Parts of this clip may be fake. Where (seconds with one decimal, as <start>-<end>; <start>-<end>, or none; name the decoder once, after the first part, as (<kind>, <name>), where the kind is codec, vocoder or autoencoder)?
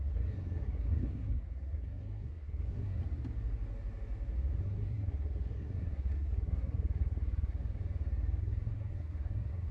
0.0-3.0 (codec, SNAC); 4.6-7.8; 8.4-9.7